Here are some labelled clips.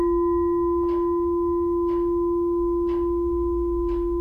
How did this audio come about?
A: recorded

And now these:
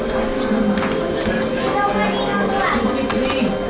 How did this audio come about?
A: recorded